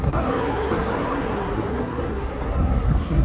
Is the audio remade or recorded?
remade